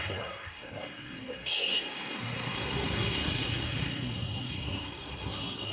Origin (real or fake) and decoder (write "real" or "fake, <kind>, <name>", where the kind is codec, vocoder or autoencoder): fake, codec, SNAC